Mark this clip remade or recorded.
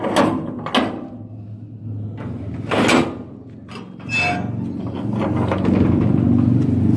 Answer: recorded